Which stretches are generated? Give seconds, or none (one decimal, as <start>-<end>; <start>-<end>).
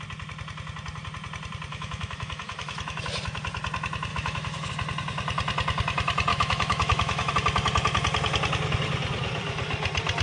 1.7-3.0; 4.1-4.7; 6.3-7.3